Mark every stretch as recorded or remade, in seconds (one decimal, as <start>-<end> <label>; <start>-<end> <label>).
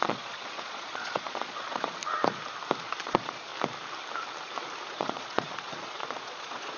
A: 0.0-2.0 remade; 2.0-2.8 recorded; 2.8-3.5 remade; 3.5-4.9 recorded; 4.9-6.8 remade